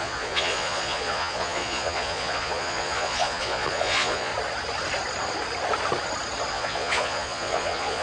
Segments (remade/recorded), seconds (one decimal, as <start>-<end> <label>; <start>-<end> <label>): 0.0-4.3 remade; 4.3-6.5 recorded; 6.5-8.0 remade